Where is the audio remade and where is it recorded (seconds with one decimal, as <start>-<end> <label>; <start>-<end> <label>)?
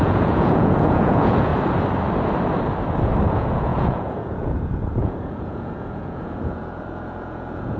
0.0-1.5 remade; 1.5-3.3 recorded; 3.3-7.8 remade